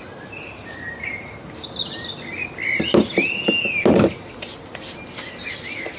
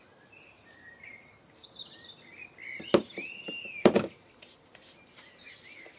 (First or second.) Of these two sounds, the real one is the first